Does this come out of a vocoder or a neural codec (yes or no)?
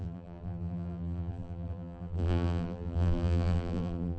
yes